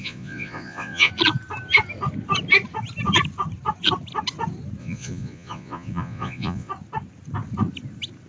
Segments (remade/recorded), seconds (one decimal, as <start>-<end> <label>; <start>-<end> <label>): 0.0-1.1 remade; 1.1-4.8 recorded; 4.8-6.7 remade; 6.7-8.3 recorded